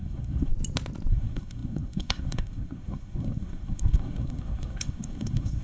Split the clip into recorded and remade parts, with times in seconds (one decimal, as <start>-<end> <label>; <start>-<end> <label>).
0.0-0.5 remade; 0.5-1.1 recorded; 1.1-5.6 remade